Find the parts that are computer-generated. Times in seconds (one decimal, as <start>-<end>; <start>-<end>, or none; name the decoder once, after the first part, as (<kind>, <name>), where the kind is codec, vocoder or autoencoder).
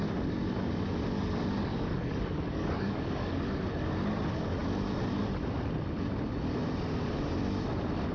1.7-3.4 (codec, DAC)